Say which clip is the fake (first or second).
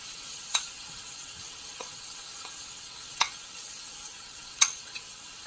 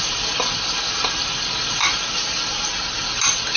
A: first